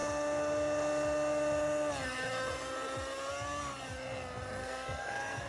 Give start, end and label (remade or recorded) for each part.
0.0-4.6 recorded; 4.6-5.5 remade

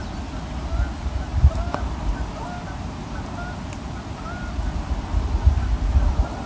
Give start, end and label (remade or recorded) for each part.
0.0-6.5 recorded

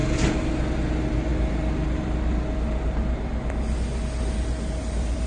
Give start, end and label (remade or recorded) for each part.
0.0-5.3 recorded

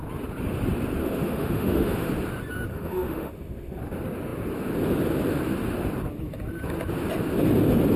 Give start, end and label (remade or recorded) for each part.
0.0-1.0 recorded; 1.0-2.1 remade; 2.1-2.7 recorded; 2.7-3.8 remade; 3.8-8.0 recorded

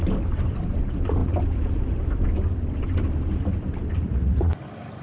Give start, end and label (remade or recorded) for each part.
0.0-4.0 recorded; 4.0-4.5 remade; 4.5-5.0 recorded